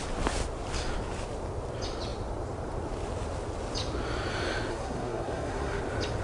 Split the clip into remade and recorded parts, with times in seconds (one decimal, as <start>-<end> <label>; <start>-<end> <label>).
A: 0.0-4.7 recorded; 4.7-5.8 remade; 5.8-6.2 recorded